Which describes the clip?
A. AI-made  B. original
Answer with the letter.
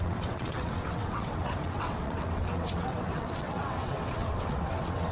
A